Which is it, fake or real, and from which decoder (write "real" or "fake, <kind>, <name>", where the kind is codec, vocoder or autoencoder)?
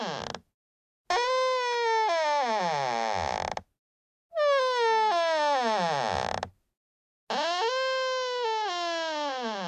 real